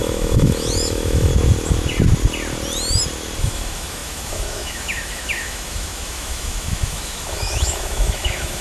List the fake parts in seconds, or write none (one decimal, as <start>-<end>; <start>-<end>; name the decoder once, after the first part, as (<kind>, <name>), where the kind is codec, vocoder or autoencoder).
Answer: 0.0-1.3 (autoencoder, DAC-VAE); 3.4-8.6